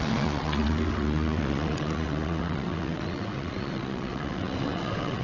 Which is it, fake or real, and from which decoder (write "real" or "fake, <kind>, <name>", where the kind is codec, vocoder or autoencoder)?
fake, vocoder, WaveNeXt